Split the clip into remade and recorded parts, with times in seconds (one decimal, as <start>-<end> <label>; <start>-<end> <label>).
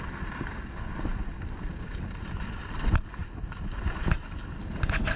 0.0-5.2 recorded